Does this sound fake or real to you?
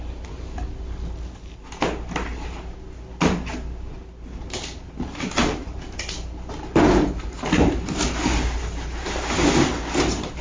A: real